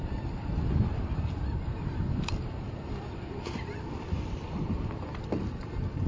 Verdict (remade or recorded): remade